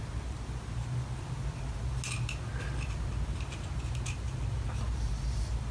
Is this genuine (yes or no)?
yes